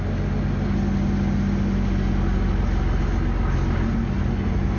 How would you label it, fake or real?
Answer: real